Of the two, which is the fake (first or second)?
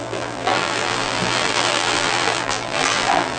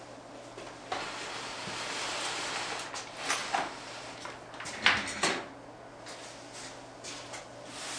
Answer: first